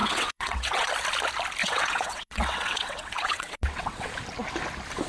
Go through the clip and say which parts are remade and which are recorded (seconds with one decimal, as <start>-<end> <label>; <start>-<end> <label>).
0.0-0.9 remade; 0.9-1.6 recorded; 1.6-4.1 remade; 4.1-5.1 recorded